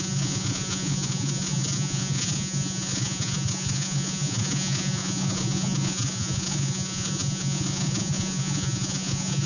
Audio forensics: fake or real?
fake